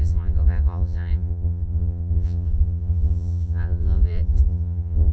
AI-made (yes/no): yes